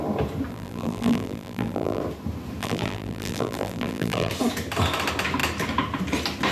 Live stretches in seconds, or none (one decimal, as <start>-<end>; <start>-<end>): 0.0-0.5; 2.0-2.6; 4.3-6.5